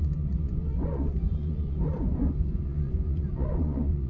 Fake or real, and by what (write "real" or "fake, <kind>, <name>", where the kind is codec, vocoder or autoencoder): fake, vocoder, Vocos